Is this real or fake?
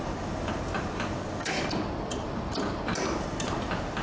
real